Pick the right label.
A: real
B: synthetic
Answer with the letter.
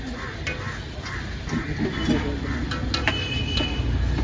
A